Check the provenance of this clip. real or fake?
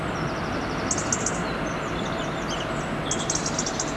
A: real